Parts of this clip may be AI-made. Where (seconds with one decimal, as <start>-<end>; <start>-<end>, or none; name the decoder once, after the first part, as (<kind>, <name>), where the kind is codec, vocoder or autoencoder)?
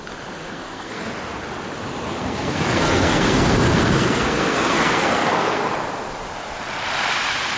0.4-1.1 (codec, SNAC); 2.2-5.7